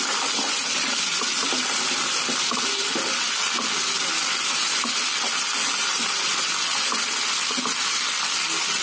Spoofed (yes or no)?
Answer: no